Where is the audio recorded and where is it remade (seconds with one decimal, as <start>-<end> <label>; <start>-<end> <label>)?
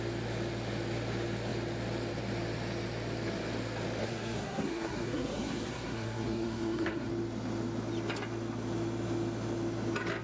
0.0-4.0 recorded; 4.0-7.1 remade; 7.1-10.2 recorded